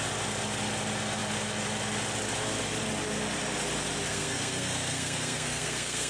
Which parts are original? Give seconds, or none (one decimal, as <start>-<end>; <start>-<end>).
0.0-4.1